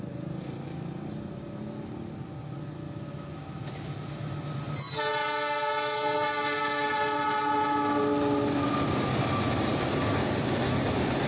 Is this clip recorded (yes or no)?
yes